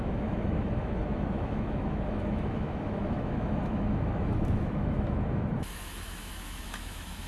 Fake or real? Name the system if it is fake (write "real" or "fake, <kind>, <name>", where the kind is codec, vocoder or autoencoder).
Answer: fake, autoencoder, DAC-VAE